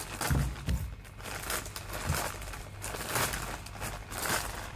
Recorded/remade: recorded